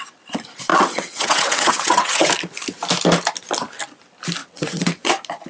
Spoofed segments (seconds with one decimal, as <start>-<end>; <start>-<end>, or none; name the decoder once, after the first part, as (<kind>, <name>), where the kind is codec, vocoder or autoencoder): 0.7-2.3 (vocoder, WaveNeXt); 4.4-5.1